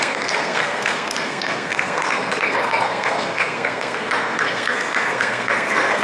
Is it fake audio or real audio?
fake